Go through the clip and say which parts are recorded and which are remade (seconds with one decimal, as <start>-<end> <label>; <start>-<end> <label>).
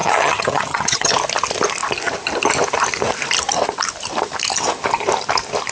0.0-1.1 remade; 1.1-5.7 recorded